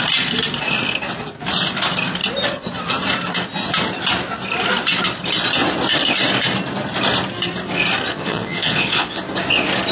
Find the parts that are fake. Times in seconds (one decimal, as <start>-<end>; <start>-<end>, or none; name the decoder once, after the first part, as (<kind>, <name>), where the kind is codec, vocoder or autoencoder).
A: 8.1-9.2 (vocoder, Vocos)